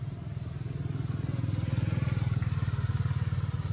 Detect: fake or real real